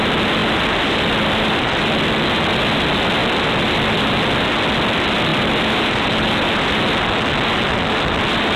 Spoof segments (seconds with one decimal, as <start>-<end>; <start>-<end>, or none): 0.4-1.9; 5.3-6.8